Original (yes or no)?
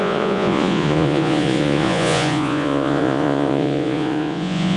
no